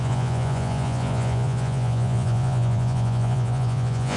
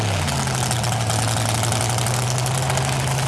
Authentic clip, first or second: second